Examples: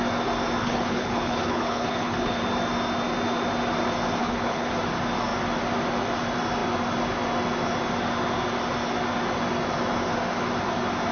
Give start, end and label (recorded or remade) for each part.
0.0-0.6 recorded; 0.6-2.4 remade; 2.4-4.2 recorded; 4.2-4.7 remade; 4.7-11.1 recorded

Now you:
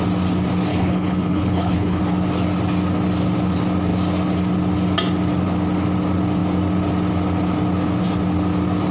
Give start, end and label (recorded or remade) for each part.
0.0-0.7 recorded; 0.7-2.0 remade; 2.0-8.9 recorded

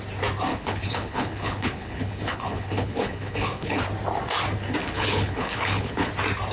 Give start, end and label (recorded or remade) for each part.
0.0-0.5 recorded; 0.5-3.8 remade; 3.8-4.8 recorded; 4.8-6.1 remade; 6.1-6.5 recorded

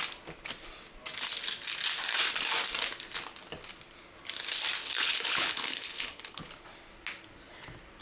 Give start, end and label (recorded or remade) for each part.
0.0-4.8 recorded; 4.8-6.4 remade; 6.4-8.0 recorded